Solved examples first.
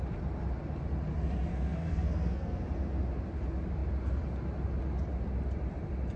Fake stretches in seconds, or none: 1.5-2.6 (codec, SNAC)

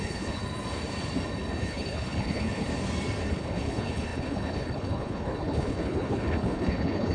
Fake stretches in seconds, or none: 0.0-0.4 (codec, HILCodec); 1.6-2.7; 3.3-7.1

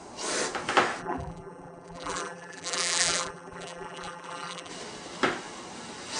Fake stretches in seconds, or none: 1.0-4.7 (vocoder, BigVGAN v2)

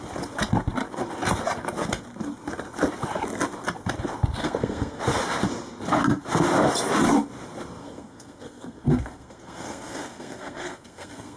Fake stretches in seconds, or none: 4.4-5.0 (codec, SNAC); 7.8-11.4

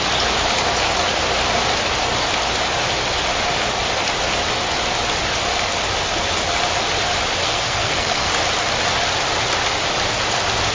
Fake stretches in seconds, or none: 7.4-8.3 (codec, SNAC)

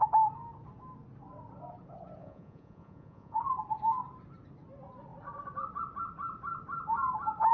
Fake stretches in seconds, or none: 2.2-3.4 (vocoder, Vocos)

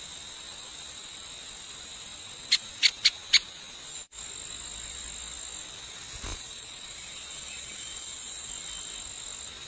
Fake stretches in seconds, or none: 6.3-8.5 (vocoder, Vocos)